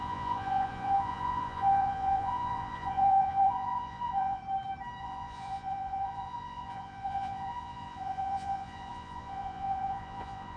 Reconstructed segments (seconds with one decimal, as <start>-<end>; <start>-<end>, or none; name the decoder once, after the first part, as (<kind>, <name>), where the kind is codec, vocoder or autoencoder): 0.0-4.4 (vocoder, Vocos); 5.0-10.6